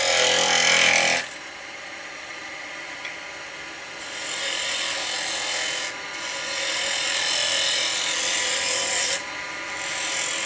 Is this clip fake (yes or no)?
no